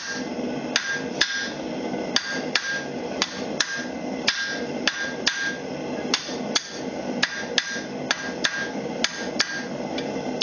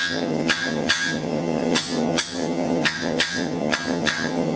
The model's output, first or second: second